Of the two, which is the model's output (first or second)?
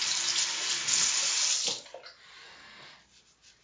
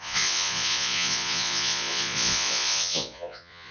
second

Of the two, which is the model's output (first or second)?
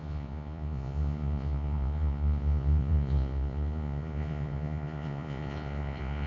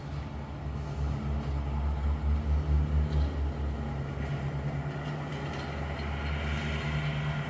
first